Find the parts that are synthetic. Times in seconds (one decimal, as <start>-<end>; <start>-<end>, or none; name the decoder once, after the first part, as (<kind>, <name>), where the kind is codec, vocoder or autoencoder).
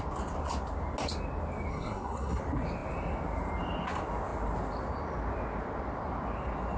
1.7-2.4 (codec, SNAC)